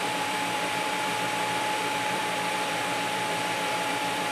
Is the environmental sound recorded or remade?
remade